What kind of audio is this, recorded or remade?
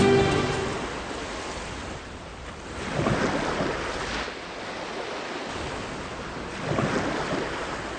recorded